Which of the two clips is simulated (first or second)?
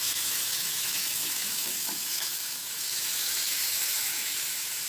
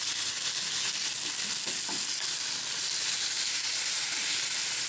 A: first